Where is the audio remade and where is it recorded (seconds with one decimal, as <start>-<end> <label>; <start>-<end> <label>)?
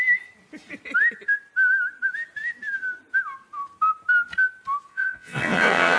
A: 0.0-4.9 recorded; 4.9-6.0 remade